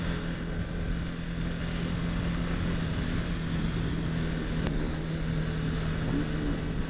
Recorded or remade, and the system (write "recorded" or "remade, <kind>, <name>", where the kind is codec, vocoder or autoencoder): recorded